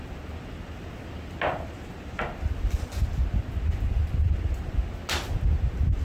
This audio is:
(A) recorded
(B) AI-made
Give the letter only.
A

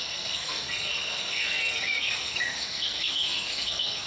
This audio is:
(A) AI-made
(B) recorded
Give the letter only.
A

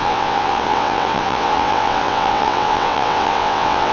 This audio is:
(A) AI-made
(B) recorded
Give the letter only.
A